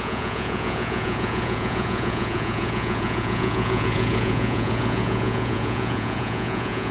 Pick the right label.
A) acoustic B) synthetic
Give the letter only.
B